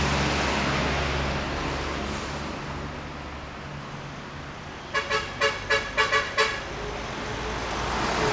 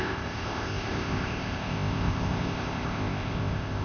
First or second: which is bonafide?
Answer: first